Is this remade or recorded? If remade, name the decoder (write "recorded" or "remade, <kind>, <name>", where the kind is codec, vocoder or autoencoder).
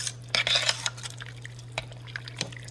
remade, vocoder, BigVGAN v2